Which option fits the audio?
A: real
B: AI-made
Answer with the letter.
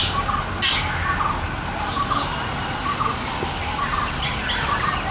A